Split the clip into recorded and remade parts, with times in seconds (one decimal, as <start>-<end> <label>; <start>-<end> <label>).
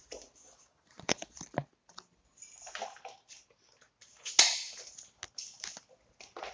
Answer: 0.0-0.7 recorded; 0.7-1.4 remade; 1.4-6.5 recorded